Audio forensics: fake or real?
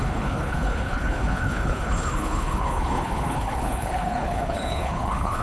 fake